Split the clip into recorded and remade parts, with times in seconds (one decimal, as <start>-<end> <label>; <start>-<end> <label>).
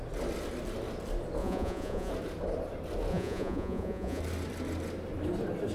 0.0-1.4 recorded; 1.4-2.1 remade; 2.1-3.1 recorded; 3.1-4.2 remade; 4.2-5.7 recorded